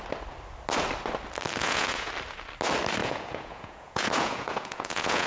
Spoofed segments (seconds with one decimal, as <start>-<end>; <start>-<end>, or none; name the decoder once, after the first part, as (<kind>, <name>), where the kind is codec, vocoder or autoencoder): 1.6-2.1 (vocoder, Vocos); 3.0-5.3